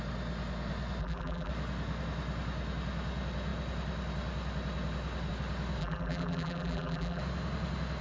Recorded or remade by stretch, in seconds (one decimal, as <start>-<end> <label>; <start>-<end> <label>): 0.0-1.0 recorded; 1.0-1.5 remade; 1.5-5.8 recorded; 5.8-7.2 remade; 7.2-8.0 recorded